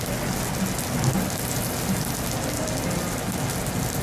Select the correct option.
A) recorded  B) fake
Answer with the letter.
A